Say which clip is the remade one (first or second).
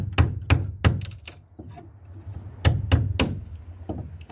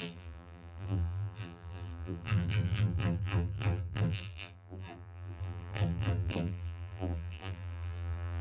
second